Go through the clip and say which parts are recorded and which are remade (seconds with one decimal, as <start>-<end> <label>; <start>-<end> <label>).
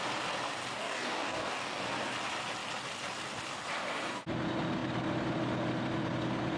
0.0-0.8 recorded; 0.8-1.8 remade; 1.8-6.6 recorded